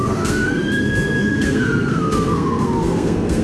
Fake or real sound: fake